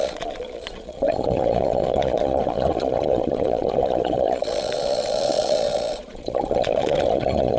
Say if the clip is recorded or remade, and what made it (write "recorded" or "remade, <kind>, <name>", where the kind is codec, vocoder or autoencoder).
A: remade, vocoder, Vocos